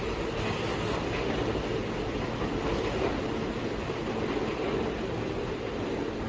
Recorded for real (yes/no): yes